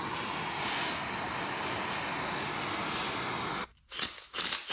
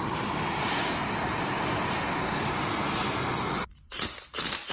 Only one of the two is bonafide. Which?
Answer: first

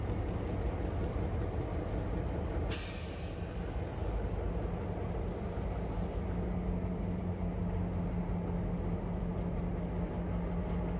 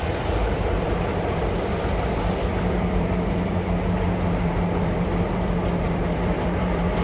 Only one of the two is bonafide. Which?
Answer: first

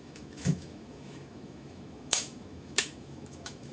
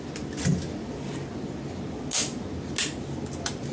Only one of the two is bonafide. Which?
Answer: second